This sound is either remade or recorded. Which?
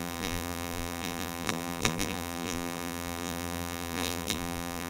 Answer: remade